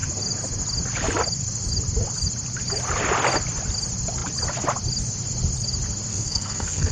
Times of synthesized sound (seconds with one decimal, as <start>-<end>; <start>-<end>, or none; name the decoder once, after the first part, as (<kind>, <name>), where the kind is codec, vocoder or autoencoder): 6.1-6.9 (codec, SNAC)